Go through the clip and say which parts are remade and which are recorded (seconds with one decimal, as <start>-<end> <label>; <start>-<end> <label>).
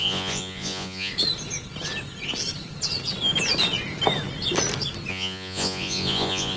0.0-1.1 remade; 1.1-5.1 recorded; 5.1-6.6 remade